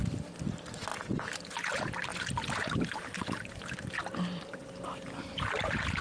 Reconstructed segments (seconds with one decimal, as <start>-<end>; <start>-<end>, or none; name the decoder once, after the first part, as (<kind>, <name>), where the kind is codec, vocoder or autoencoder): none